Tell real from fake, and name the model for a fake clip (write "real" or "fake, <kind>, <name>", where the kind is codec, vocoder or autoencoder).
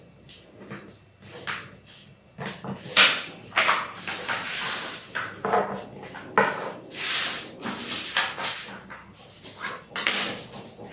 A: real